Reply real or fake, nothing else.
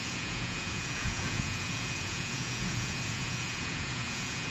fake